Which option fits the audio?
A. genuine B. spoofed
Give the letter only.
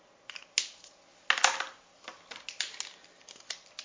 A